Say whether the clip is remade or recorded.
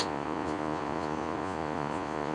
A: remade